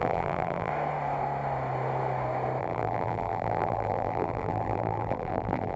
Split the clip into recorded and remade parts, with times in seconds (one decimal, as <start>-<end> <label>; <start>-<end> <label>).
0.0-0.7 remade; 0.7-2.6 recorded; 2.6-5.8 remade